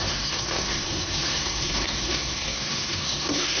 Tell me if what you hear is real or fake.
fake